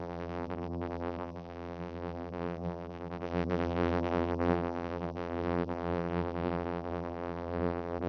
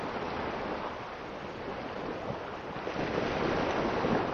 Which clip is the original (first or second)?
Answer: second